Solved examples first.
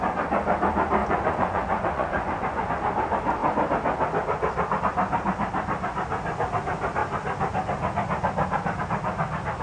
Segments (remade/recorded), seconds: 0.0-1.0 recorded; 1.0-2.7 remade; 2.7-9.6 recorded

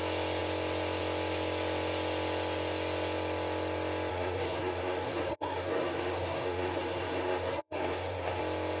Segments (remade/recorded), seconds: 0.0-4.1 recorded; 4.1-8.4 remade; 8.4-8.8 recorded

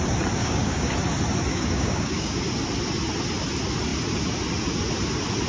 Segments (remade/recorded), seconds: 0.0-0.4 recorded; 0.4-0.9 remade; 0.9-1.5 recorded; 1.5-2.4 remade; 2.4-5.5 recorded

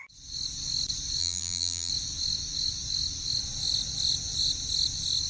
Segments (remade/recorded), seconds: 0.0-1.2 recorded; 1.2-1.9 remade; 1.9-5.3 recorded

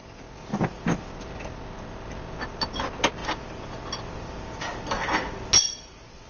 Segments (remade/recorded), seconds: 0.0-6.3 recorded

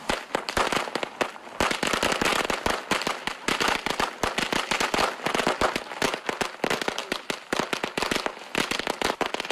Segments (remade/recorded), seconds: 0.0-9.5 recorded

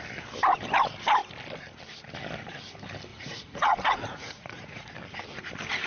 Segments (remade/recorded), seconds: 0.0-3.1 recorded; 3.1-4.9 remade; 4.9-5.9 recorded